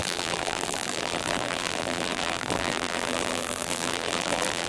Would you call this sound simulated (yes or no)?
yes